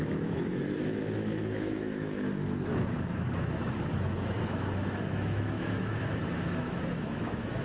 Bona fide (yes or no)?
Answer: no